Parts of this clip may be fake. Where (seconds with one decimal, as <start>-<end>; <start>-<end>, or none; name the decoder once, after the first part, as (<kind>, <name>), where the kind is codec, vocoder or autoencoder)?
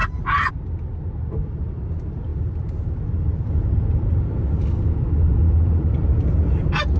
none